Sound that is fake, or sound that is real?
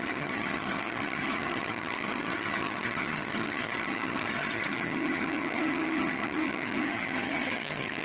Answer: fake